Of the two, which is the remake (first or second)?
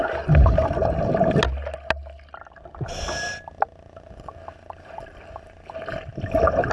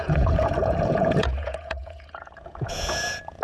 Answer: second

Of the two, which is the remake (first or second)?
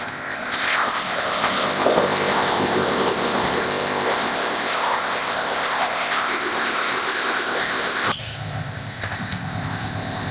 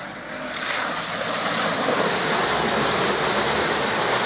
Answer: first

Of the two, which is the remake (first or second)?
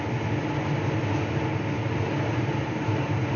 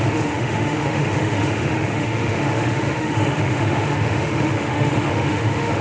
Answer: second